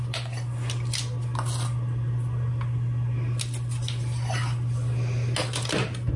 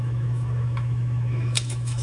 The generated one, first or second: second